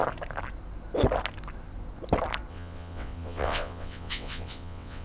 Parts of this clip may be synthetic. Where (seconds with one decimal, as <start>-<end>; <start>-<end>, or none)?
2.5-5.0